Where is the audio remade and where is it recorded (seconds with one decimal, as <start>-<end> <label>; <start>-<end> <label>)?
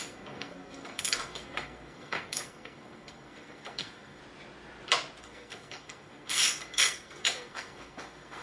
0.0-4.2 remade; 4.2-5.2 recorded; 5.2-8.4 remade